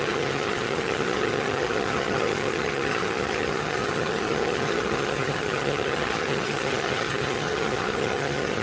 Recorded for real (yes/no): no